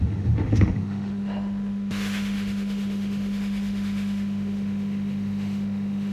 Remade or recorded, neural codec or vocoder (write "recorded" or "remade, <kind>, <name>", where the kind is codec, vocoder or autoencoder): remade, autoencoder, DAC-VAE